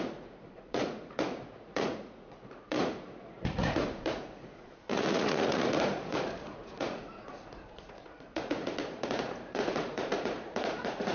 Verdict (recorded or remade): remade